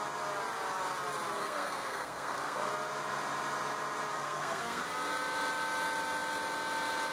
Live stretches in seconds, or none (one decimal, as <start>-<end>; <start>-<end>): 0.0-1.4; 2.7-4.1; 4.8-7.1